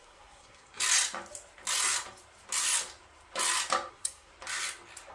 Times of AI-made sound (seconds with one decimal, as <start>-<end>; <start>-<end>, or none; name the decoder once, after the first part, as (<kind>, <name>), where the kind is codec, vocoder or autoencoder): 0.0-0.8 (codec, SNAC); 3.9-4.3